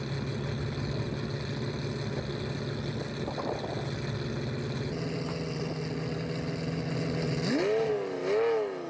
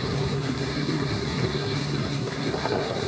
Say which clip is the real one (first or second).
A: first